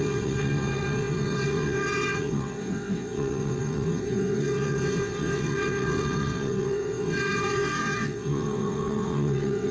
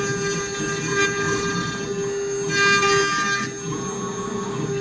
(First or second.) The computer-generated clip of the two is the first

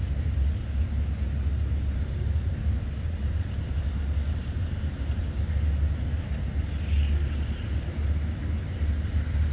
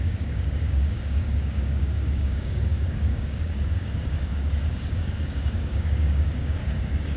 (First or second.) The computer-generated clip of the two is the second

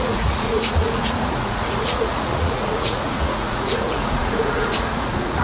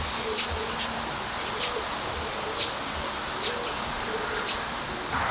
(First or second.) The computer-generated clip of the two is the first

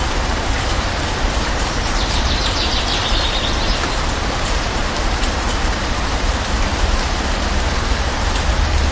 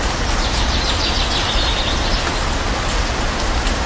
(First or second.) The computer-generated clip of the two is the first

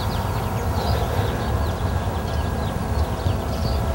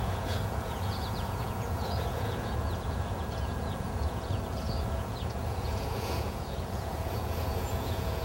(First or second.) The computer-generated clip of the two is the second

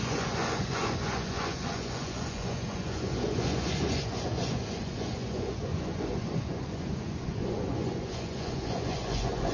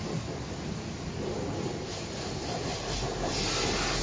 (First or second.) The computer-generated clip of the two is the first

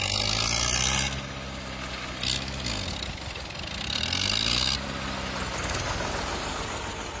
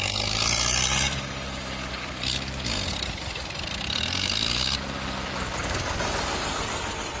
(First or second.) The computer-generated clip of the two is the second